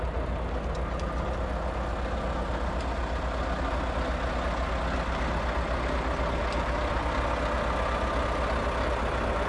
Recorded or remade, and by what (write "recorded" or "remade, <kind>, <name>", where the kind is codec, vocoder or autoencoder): recorded